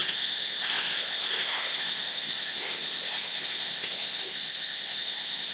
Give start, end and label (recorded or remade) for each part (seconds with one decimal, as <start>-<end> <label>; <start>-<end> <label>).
0.0-5.5 remade